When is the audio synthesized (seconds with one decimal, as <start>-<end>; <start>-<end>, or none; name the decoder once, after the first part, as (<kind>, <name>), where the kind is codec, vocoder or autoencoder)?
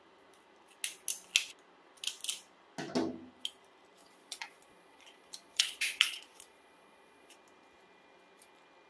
4.0-7.3 (vocoder, Vocos)